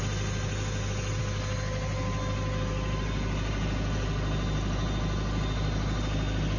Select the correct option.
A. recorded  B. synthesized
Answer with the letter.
A